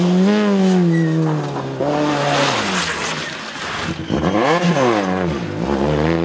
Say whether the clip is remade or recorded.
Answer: recorded